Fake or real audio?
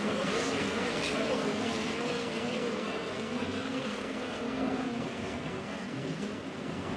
fake